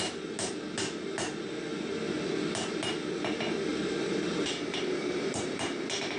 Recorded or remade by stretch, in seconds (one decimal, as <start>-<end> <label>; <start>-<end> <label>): 0.0-3.7 recorded; 3.7-6.2 remade